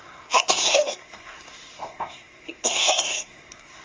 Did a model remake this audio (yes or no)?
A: yes